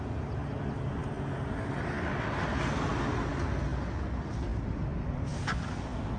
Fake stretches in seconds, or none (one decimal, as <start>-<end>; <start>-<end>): none